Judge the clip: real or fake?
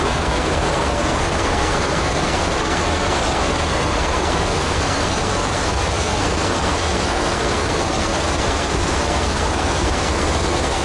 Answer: fake